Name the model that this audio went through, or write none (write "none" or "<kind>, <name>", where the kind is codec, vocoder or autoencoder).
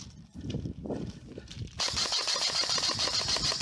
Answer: vocoder, BigVGAN v2